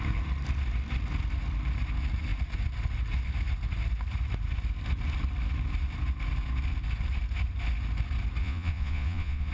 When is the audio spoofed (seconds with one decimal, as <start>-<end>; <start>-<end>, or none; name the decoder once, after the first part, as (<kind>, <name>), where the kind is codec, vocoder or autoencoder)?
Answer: 8.4-9.5 (vocoder, Vocos)